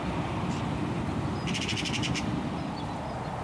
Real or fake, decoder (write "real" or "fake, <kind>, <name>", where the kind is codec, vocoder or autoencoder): real